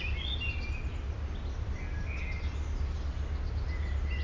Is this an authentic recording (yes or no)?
yes